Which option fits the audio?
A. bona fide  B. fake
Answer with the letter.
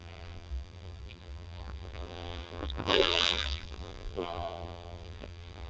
B